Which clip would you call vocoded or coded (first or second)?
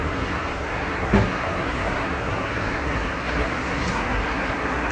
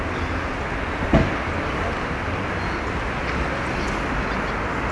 first